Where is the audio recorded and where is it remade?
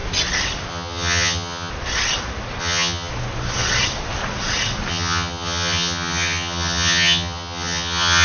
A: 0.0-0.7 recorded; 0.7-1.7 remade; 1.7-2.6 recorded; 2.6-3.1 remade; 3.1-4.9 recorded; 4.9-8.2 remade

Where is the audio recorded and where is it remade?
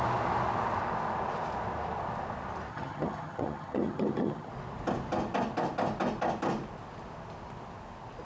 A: 0.0-2.7 recorded; 2.7-4.5 remade; 4.5-8.2 recorded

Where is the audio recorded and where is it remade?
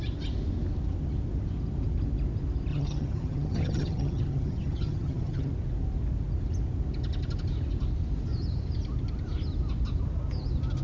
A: 0.0-2.7 recorded; 2.7-5.5 remade; 5.5-10.8 recorded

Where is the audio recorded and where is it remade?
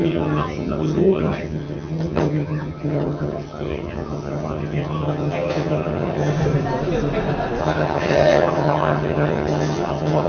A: 0.0-6.3 remade; 6.3-7.6 recorded; 7.6-10.3 remade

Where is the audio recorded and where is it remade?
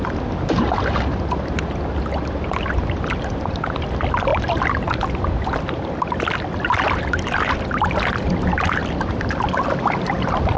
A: 0.0-10.6 recorded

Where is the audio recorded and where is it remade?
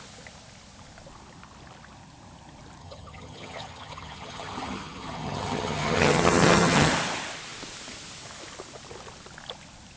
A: 0.0-2.8 recorded; 2.8-6.9 remade; 6.9-10.0 recorded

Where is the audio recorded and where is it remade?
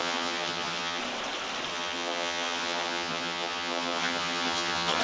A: 0.0-1.0 remade; 1.0-1.7 recorded; 1.7-5.0 remade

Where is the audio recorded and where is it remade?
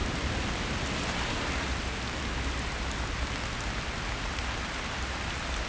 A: 0.0-5.7 recorded